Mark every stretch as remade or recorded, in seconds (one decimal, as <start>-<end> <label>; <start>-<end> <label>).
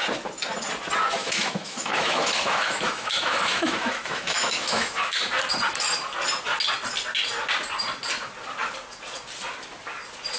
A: 0.0-1.2 recorded; 1.2-5.2 remade; 5.2-10.4 recorded